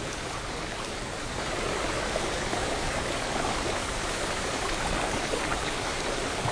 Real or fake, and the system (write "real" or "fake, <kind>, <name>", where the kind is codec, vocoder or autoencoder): fake, codec, DAC